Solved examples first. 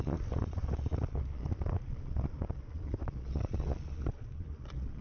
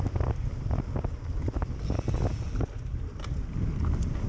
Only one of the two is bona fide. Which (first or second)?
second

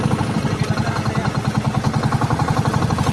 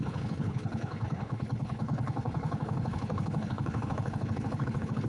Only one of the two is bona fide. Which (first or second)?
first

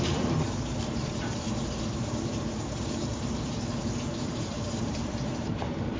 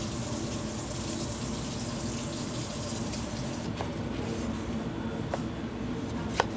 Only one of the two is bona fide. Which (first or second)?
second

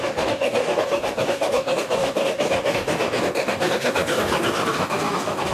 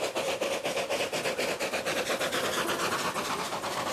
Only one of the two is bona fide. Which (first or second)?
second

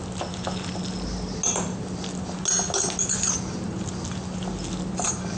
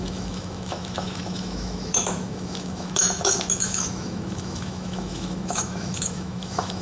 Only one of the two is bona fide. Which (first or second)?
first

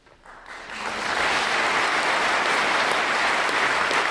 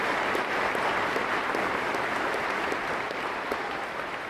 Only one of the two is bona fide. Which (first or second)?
first